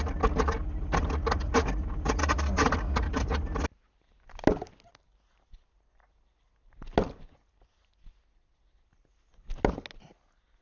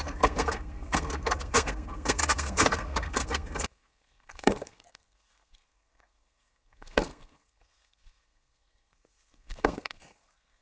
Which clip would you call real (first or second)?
first